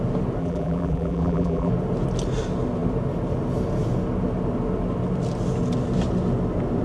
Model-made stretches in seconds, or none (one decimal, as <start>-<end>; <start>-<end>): 0.4-1.7